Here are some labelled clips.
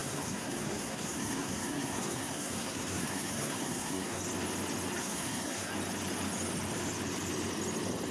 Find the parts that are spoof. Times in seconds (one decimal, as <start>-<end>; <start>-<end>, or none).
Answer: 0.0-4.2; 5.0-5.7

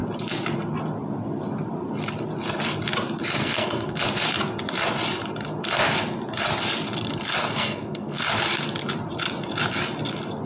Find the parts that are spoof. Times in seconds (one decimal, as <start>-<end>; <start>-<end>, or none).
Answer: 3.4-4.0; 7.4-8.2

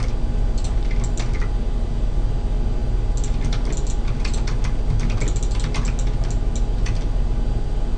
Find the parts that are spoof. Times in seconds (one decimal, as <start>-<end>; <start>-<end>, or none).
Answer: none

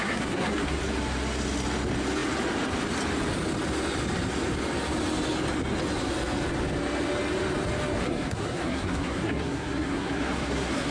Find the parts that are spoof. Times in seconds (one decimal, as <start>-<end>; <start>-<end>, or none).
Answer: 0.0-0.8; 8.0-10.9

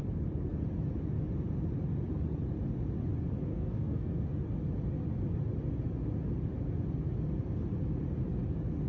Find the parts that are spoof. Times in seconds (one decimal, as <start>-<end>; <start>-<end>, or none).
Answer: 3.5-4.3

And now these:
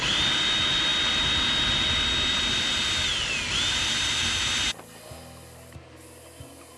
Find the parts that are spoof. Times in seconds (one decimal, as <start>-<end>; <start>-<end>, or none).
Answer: none

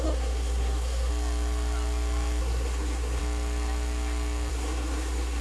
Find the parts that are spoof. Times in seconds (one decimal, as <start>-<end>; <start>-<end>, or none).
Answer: 0.0-1.1; 2.4-3.2; 4.5-5.4